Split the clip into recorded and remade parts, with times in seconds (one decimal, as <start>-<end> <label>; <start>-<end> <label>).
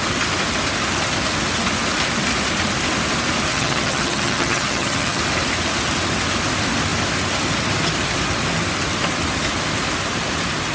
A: 0.0-3.5 recorded; 3.5-5.2 remade; 5.2-10.7 recorded